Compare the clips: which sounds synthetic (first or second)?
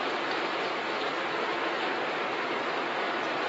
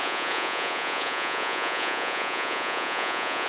second